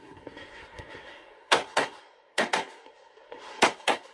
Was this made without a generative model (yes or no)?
no